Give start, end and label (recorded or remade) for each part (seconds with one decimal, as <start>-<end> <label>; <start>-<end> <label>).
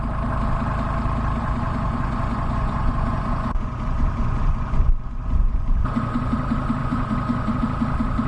0.0-1.4 recorded; 1.4-6.3 remade; 6.3-6.8 recorded; 6.8-7.6 remade; 7.6-8.3 recorded